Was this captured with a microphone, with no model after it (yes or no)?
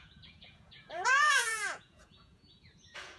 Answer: no